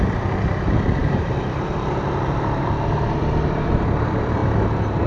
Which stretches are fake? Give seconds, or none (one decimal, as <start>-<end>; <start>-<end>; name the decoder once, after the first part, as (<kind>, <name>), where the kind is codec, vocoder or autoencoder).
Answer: 0.0-4.4 (vocoder, BigVGAN v2)